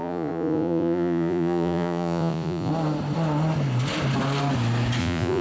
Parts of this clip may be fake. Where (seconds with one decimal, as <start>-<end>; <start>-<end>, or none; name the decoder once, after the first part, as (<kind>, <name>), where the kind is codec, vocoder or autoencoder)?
0.0-2.7 (vocoder, Vocos); 5.0-5.4

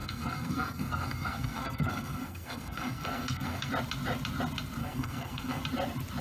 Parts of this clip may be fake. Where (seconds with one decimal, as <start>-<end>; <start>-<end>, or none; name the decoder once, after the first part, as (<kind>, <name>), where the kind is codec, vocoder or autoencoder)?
0.0-3.7 (codec, SNAC); 4.8-5.6

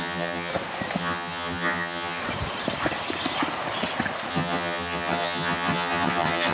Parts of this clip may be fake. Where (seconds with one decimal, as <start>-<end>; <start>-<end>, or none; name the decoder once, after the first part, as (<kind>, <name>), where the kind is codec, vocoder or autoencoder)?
0.0-0.5 (vocoder, HiFi-GAN); 1.0-2.2; 4.3-6.5

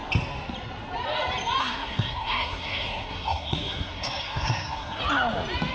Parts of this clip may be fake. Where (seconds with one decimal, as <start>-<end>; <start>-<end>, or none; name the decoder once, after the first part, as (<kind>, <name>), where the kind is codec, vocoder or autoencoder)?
1.6-5.0 (codec, SNAC)

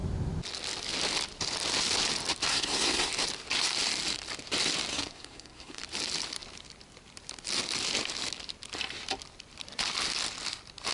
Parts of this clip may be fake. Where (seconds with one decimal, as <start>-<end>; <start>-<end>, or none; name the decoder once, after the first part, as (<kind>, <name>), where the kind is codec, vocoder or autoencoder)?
2.5-3.1 (codec, SNAC); 4.9-5.8